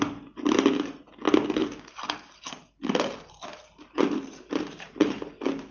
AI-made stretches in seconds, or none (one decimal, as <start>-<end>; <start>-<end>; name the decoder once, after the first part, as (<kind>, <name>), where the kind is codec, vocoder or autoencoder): 1.6-2.6 (vocoder, BigVGAN v2); 3.5-5.2